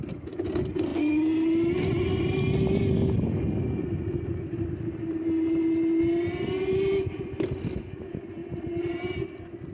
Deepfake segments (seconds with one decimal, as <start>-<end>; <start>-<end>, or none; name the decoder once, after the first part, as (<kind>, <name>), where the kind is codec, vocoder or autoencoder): 8.4-8.9 (vocoder, BigVGAN v2)